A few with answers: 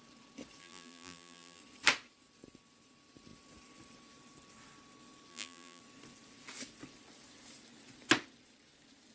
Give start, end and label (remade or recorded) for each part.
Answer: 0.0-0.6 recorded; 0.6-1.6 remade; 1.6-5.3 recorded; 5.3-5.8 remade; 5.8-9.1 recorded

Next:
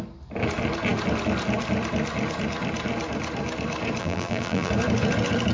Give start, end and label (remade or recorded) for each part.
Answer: 0.0-4.0 recorded; 4.0-4.7 remade; 4.7-5.5 recorded

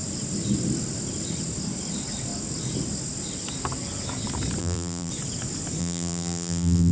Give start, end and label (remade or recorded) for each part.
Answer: 0.0-4.6 recorded; 4.6-5.1 remade; 5.1-5.8 recorded; 5.8-6.9 remade

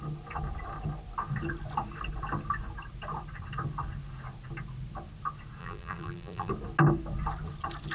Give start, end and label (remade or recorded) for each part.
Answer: 0.0-5.6 recorded; 5.6-6.5 remade; 6.5-7.9 recorded

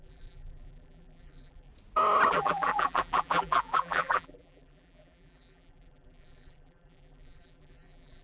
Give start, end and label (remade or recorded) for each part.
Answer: 0.0-1.7 remade; 1.7-2.3 recorded; 2.3-8.2 remade

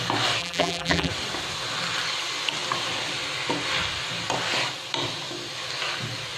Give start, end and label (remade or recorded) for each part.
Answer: 0.0-0.4 recorded; 0.4-1.1 remade; 1.1-6.4 recorded

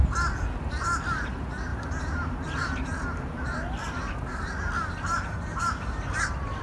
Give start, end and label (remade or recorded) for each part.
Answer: 0.0-5.5 recorded; 5.5-6.6 remade